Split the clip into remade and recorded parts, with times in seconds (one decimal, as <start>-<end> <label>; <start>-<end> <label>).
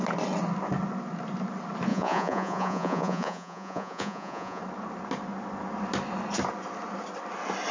0.0-1.9 recorded; 1.9-4.6 remade; 4.6-7.7 recorded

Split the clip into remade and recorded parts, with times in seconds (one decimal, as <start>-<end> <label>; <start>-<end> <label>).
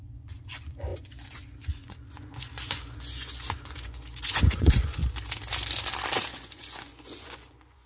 0.0-5.0 remade; 5.0-6.3 recorded; 6.3-7.9 remade